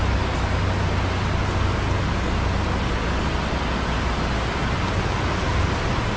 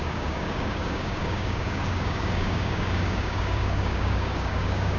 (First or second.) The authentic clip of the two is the first